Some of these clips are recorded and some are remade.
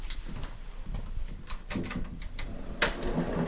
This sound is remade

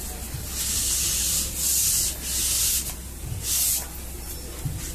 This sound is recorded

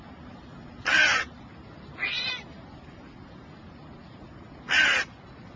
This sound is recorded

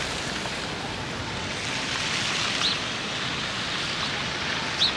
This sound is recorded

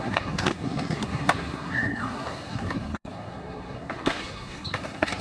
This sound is remade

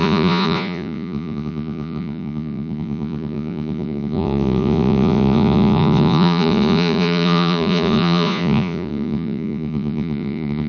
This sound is remade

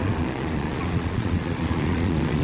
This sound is remade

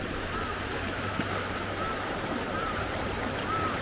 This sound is remade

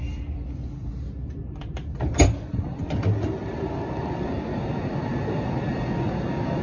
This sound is recorded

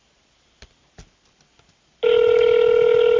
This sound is recorded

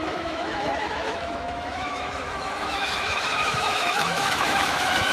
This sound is remade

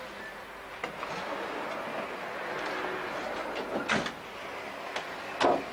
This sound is recorded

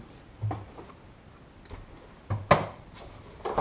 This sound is recorded